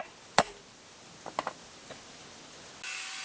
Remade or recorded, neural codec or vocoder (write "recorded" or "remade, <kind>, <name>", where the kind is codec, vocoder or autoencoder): recorded